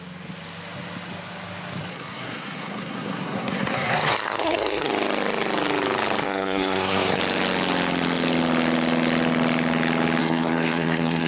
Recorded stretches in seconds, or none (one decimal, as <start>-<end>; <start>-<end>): 0.0-1.9; 4.9-6.2; 7.2-10.2